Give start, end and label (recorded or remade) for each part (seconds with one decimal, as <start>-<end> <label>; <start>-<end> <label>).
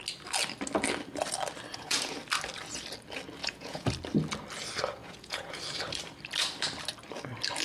0.0-1.7 recorded; 1.7-2.2 remade; 2.2-3.4 recorded; 3.4-3.9 remade; 3.9-5.0 recorded; 5.0-5.6 remade; 5.6-7.6 recorded